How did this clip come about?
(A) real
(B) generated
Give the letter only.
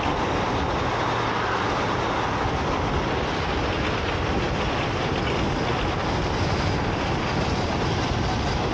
A